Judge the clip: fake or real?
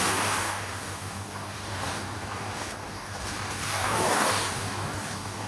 fake